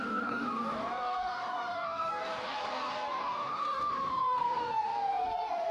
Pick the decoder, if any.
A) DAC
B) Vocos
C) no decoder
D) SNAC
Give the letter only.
A